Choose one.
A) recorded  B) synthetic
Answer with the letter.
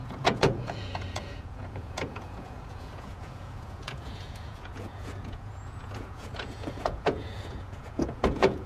B